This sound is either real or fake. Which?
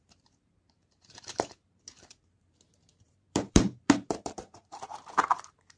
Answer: fake